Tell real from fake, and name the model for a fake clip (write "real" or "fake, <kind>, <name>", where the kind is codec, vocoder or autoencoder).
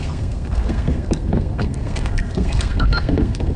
fake, codec, SNAC